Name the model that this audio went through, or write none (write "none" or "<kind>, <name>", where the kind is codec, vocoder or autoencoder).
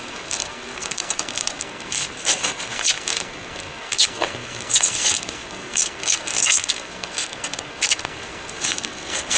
codec, SNAC